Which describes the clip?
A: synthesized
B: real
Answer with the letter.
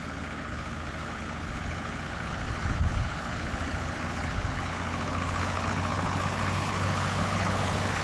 A